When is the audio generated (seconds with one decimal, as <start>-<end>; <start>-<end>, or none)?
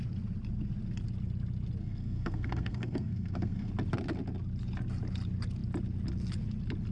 1.8-3.7